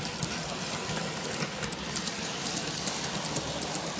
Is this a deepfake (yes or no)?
no